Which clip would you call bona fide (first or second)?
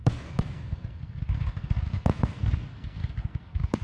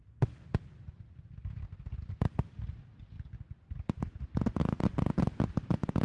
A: second